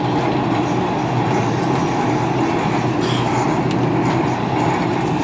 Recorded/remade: recorded